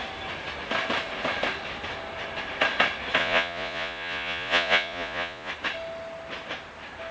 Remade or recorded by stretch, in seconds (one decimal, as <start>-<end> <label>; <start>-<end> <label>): 0.0-3.2 recorded; 3.2-5.5 remade; 5.5-7.1 recorded